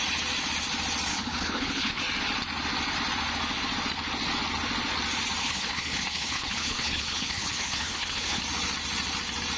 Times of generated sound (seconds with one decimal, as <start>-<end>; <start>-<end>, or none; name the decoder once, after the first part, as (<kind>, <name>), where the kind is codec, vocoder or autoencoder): 1.1-2.0 (codec, HILCodec); 5.4-8.4